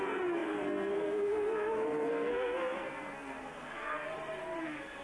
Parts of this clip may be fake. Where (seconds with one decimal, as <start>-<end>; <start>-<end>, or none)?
0.0-4.1; 4.6-5.0